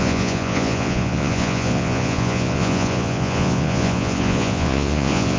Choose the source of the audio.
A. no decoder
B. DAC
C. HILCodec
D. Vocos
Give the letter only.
D